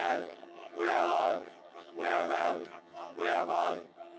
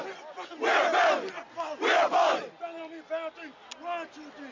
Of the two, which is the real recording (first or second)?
second